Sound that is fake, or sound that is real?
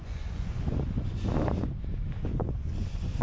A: fake